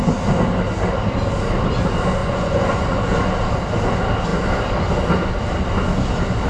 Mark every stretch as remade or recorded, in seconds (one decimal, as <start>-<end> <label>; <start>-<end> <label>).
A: 0.0-2.2 recorded; 2.2-3.2 remade; 3.2-6.5 recorded